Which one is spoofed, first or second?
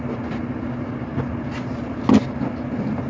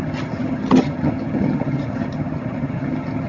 second